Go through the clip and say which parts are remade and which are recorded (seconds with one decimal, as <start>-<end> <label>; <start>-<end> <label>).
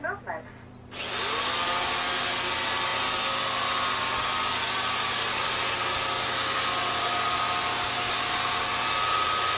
0.0-9.6 recorded